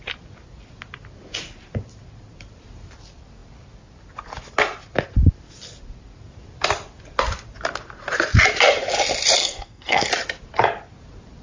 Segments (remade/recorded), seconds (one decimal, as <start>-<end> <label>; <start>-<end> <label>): 0.0-9.4 recorded; 9.4-10.1 remade; 10.1-11.4 recorded